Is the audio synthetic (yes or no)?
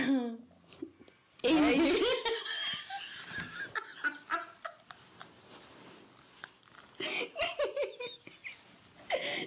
no